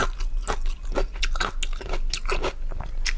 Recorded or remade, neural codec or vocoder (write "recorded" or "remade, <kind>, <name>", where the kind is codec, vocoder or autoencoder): recorded